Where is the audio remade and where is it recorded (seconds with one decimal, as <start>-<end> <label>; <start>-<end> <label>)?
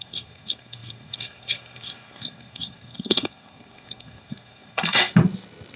0.0-5.0 remade; 5.0-5.8 recorded